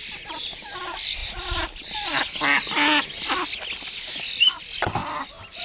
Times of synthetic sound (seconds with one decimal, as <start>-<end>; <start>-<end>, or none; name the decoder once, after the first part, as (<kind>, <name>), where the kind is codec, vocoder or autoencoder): none